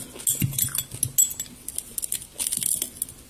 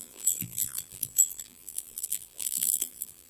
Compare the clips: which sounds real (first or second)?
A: first